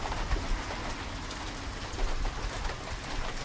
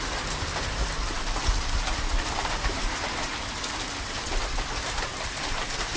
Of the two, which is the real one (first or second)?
first